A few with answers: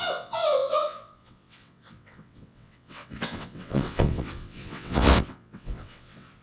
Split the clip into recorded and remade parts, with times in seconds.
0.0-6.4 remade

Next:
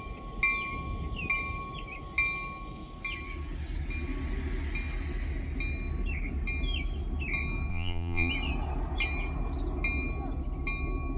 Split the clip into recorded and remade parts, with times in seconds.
0.0-7.7 recorded; 7.7-8.3 remade; 8.3-11.2 recorded

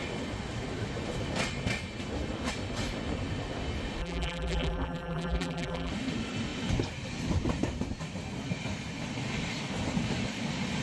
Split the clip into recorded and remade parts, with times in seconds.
0.0-4.0 recorded; 4.0-5.9 remade; 5.9-10.8 recorded

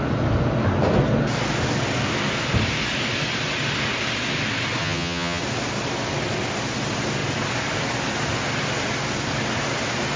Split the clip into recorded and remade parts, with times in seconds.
0.0-4.8 recorded; 4.8-5.4 remade; 5.4-10.2 recorded